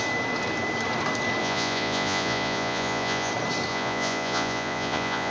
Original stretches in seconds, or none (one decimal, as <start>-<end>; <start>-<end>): 0.0-1.4; 3.3-3.7